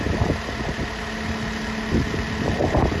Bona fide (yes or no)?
yes